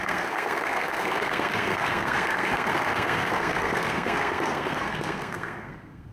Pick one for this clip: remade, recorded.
remade